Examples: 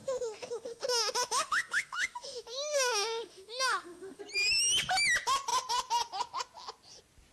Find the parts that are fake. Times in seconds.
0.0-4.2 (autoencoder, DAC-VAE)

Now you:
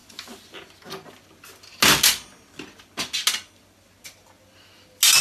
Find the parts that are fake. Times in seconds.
none